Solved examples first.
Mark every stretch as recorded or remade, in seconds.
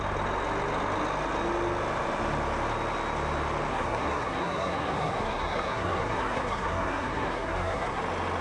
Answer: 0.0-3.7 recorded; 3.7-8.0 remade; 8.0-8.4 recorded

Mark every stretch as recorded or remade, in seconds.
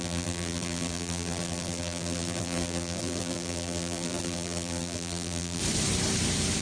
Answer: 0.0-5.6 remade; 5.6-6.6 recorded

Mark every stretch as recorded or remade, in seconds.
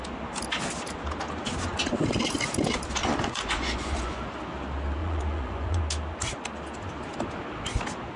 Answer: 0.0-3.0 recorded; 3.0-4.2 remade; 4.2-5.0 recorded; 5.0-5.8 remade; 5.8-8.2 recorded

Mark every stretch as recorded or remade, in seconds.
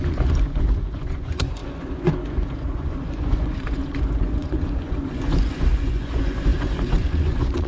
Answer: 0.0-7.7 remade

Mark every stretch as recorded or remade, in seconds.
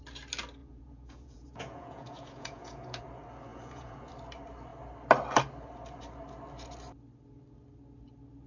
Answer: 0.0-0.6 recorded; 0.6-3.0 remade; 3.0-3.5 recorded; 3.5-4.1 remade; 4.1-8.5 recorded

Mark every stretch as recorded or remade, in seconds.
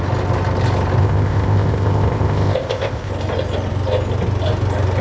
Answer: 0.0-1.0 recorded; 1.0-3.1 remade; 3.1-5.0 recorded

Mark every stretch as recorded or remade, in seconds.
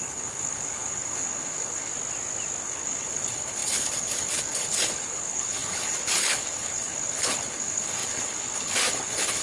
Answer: 0.0-1.9 remade; 1.9-2.6 recorded; 2.6-9.4 remade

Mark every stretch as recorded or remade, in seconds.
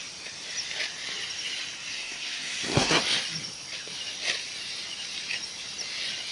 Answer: 0.0-1.9 recorded; 1.9-3.0 remade; 3.0-6.3 recorded